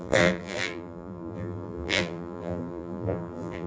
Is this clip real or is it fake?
fake